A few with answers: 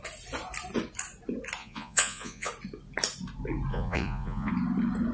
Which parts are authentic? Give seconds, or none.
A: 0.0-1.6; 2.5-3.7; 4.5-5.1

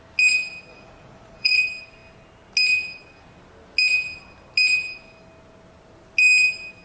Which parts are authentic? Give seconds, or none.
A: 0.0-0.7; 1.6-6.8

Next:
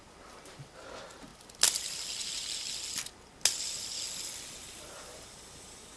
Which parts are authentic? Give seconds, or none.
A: 0.0-6.0

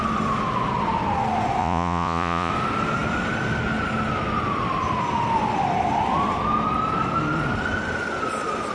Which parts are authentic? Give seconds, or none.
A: 0.0-1.6; 2.5-8.7

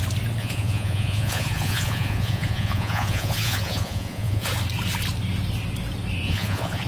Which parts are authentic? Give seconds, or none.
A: 0.0-0.4; 4.5-6.2

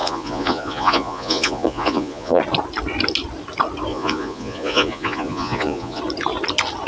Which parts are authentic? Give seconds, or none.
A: 2.4-3.9; 6.0-6.9

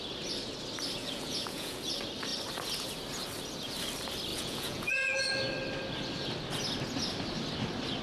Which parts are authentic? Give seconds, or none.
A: 0.0-1.0; 1.8-4.3; 5.2-8.0